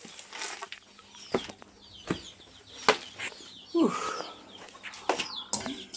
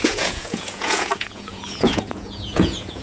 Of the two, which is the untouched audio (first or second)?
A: first